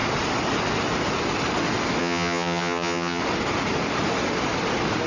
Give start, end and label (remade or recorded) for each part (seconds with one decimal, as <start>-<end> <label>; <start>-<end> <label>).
0.0-2.0 recorded; 2.0-3.2 remade; 3.2-5.1 recorded